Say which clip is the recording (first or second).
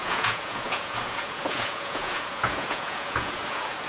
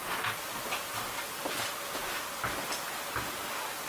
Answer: second